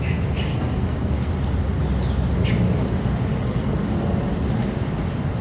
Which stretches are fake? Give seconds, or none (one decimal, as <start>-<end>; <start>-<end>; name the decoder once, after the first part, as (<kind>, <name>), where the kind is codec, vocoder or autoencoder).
0.5-1.3 (codec, SNAC); 3.3-3.8